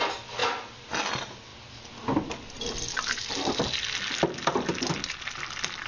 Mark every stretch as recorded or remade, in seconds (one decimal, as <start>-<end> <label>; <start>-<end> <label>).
0.0-5.9 recorded